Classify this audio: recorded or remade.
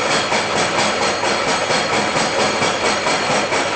recorded